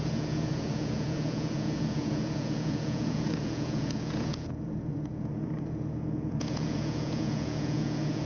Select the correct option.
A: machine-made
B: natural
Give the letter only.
A